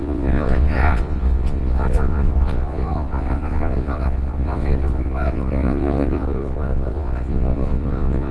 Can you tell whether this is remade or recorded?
remade